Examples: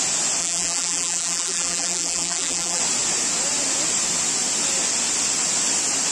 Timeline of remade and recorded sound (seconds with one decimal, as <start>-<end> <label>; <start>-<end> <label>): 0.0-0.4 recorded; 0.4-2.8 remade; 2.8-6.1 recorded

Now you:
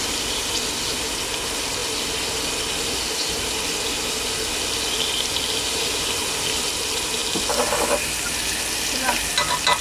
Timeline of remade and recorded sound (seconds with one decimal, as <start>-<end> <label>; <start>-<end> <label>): 0.0-9.8 recorded

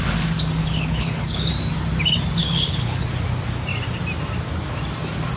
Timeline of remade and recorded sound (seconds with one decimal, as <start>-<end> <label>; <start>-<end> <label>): 0.0-0.6 recorded; 0.6-1.5 remade; 1.5-2.4 recorded; 2.4-3.1 remade; 3.1-5.4 recorded